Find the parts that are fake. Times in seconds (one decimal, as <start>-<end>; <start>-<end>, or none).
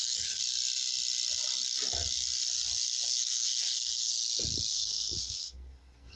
0.0-0.4; 3.1-4.1; 4.7-6.2